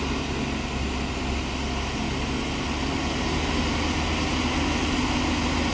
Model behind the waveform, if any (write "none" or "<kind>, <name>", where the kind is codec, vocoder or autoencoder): none